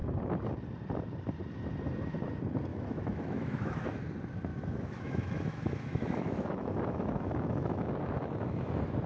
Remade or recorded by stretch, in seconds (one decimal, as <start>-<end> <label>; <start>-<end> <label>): 0.0-2.7 recorded; 2.7-4.0 remade; 4.0-4.5 recorded; 4.5-8.7 remade; 8.7-9.1 recorded